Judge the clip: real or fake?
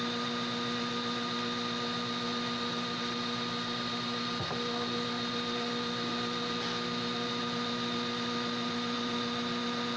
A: real